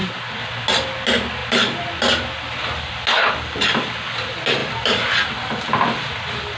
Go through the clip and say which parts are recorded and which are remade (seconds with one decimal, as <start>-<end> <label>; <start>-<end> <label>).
0.0-6.6 recorded